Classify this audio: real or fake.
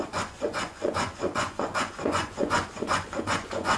fake